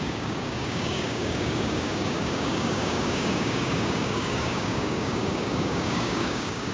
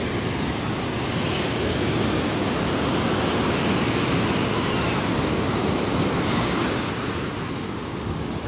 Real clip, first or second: second